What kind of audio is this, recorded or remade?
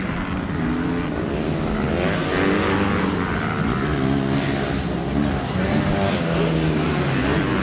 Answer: recorded